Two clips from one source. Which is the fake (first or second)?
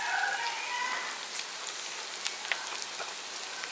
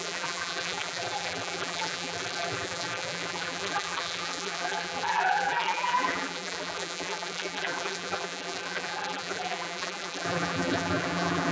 second